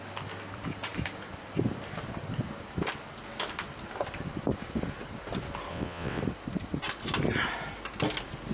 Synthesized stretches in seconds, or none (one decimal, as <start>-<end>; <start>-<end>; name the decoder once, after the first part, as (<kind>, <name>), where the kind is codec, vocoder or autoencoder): 5.7-6.2 (vocoder, WaveNeXt)